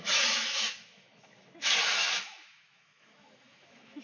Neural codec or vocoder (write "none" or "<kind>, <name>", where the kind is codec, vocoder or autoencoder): autoencoder, DAC-VAE